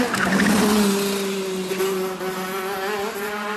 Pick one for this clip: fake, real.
real